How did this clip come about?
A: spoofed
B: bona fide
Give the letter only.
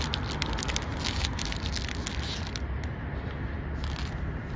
B